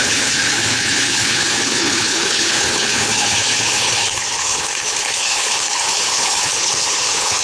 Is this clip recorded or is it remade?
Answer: remade